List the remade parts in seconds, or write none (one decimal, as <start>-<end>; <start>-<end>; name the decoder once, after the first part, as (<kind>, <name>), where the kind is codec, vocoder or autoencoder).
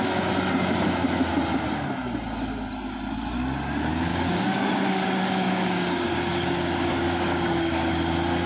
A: 4.1-7.9 (codec, DAC)